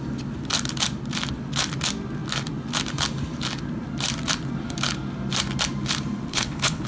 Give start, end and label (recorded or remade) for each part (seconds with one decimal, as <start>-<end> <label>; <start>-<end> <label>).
0.0-6.3 recorded; 6.3-6.9 remade